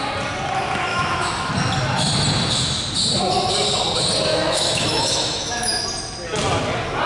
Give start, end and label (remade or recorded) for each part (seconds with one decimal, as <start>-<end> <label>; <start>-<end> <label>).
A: 0.0-0.9 recorded; 0.9-1.5 remade; 1.5-4.3 recorded; 4.3-5.8 remade; 5.8-7.1 recorded